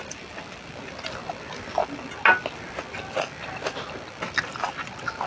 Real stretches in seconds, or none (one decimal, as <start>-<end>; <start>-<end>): 0.0-5.3